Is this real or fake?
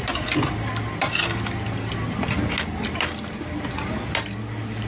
real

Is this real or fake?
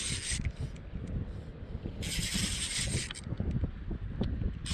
real